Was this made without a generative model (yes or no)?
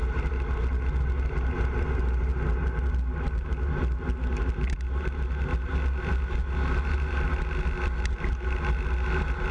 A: yes